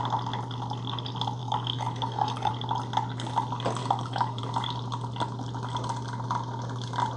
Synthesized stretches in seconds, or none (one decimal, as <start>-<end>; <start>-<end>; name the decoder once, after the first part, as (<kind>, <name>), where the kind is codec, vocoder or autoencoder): 1.4-2.5 (codec, DAC); 3.8-4.4